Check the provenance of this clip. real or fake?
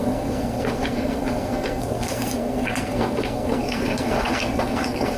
fake